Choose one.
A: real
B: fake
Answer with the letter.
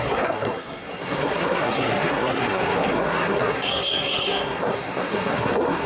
B